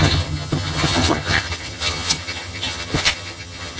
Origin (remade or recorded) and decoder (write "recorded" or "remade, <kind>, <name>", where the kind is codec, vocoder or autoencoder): remade, vocoder, HiFi-GAN